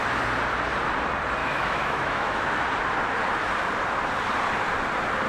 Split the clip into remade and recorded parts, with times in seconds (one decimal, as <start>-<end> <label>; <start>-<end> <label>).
0.0-1.4 recorded; 1.4-2.6 remade; 2.6-5.3 recorded